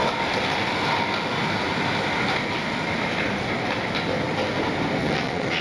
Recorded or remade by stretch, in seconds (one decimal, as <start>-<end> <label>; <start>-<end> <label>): 0.0-5.0 recorded; 5.0-5.6 remade